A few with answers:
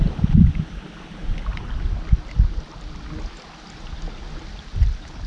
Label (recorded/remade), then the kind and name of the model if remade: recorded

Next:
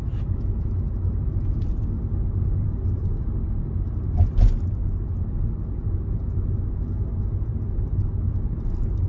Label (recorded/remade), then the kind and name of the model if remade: recorded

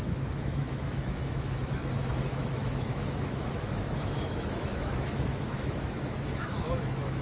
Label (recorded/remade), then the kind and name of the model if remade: remade, autoencoder, DAC-VAE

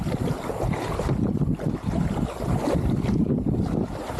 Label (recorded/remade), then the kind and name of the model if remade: recorded